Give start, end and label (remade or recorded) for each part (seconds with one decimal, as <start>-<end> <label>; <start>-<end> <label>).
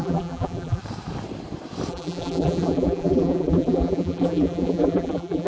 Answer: 0.0-0.8 remade; 0.8-1.9 recorded; 1.9-5.5 remade